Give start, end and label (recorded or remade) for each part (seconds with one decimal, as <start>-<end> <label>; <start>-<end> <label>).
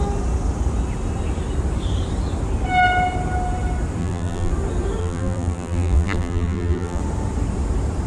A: 0.0-4.0 recorded; 4.0-4.5 remade; 4.5-5.0 recorded; 5.0-7.0 remade; 7.0-8.1 recorded